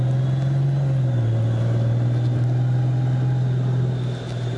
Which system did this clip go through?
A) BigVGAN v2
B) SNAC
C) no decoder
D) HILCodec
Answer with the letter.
C